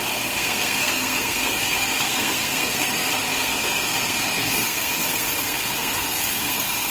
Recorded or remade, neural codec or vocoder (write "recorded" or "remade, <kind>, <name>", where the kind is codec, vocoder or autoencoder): remade, codec, SNAC